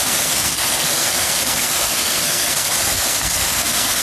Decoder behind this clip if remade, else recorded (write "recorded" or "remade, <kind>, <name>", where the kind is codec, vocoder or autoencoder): remade, codec, SNAC